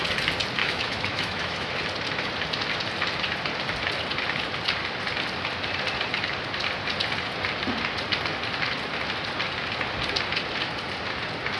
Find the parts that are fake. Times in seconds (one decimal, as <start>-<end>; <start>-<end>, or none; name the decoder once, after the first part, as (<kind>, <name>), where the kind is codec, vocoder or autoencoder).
0.6-1.7 (autoencoder, DAC-VAE)